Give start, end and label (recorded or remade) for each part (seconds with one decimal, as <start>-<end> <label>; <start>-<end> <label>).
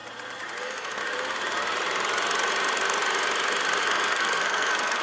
0.0-0.6 recorded; 0.6-1.0 remade; 1.0-3.8 recorded; 3.8-5.0 remade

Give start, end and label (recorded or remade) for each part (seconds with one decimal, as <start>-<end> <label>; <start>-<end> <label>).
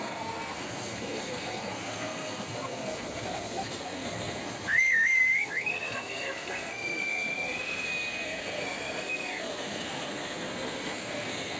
0.0-11.6 remade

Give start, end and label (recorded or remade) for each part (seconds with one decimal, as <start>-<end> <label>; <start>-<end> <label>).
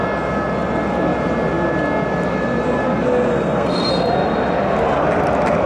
0.0-3.3 recorded; 3.3-3.9 remade; 3.9-5.7 recorded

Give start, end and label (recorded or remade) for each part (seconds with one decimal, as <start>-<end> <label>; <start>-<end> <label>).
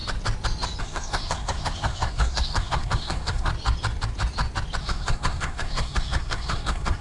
0.0-0.8 recorded; 0.8-3.5 remade; 3.5-4.8 recorded; 4.8-7.0 remade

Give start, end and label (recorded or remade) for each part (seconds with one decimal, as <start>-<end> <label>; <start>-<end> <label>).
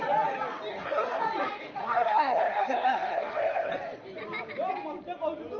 0.0-0.7 recorded; 0.7-1.2 remade; 1.2-1.8 recorded; 1.8-3.7 remade; 3.7-5.6 recorded